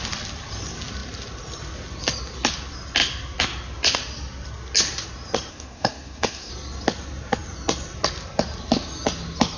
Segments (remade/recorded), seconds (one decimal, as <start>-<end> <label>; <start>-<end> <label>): 0.0-5.5 recorded; 5.5-6.5 remade; 6.5-9.6 recorded